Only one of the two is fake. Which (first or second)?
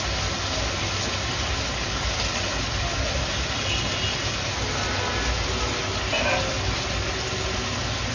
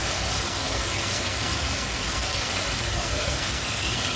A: second